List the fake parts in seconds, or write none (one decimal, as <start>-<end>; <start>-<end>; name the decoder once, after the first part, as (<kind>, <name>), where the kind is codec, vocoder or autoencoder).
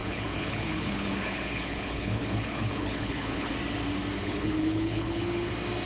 0.0-3.5 (codec, HILCodec); 4.2-5.5